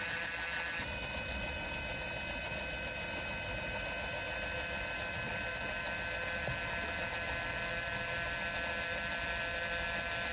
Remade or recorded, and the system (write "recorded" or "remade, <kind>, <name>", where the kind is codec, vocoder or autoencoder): recorded